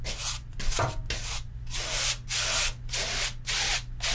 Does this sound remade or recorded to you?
recorded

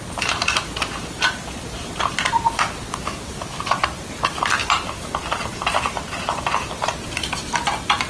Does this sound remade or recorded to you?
recorded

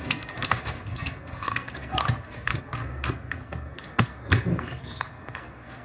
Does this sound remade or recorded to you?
remade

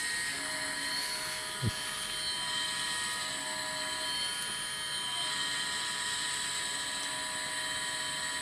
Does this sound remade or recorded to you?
recorded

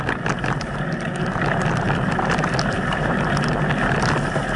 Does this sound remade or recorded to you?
recorded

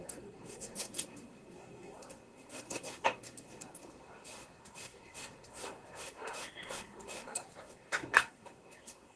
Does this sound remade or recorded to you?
remade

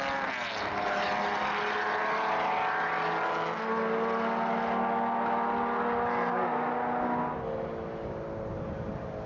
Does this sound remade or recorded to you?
recorded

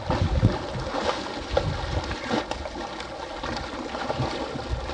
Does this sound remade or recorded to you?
recorded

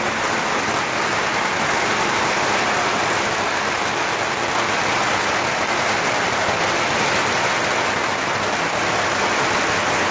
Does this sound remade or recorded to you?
recorded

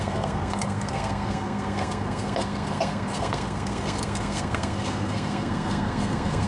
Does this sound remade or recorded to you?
remade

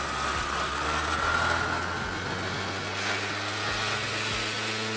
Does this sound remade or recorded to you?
recorded